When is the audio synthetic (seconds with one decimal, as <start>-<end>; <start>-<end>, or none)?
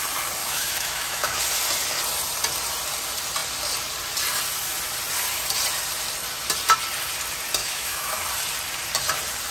0.4-1.4; 7.6-8.2